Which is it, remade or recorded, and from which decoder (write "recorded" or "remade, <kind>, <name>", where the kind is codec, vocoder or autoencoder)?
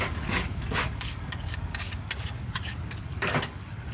remade, codec, DAC